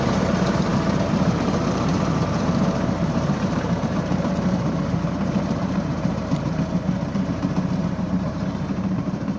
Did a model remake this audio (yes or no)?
yes